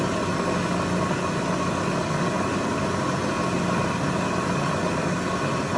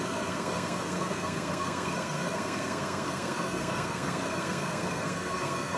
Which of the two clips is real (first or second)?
first